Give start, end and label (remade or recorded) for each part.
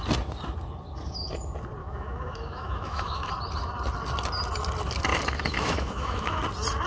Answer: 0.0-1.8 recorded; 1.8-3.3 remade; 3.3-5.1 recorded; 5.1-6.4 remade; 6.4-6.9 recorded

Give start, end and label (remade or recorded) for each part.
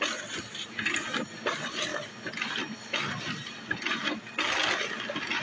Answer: 0.0-5.4 recorded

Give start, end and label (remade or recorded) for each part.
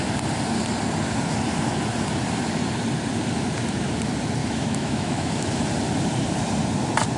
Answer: 0.0-4.4 recorded; 4.4-5.6 remade; 5.6-7.2 recorded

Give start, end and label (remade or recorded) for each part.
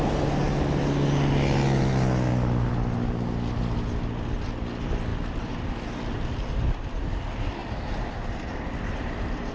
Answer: 0.0-9.5 recorded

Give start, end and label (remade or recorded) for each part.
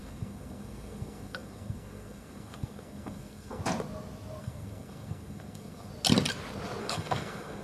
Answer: 0.0-3.6 remade; 3.6-4.4 recorded; 4.4-5.9 remade; 5.9-6.8 recorded; 6.8-7.6 remade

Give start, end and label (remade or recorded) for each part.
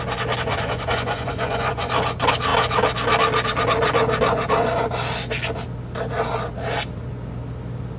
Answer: 0.0-0.5 recorded; 0.5-1.9 remade; 1.9-8.0 recorded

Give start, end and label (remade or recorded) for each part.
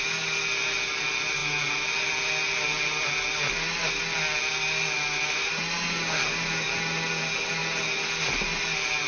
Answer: 0.0-9.1 recorded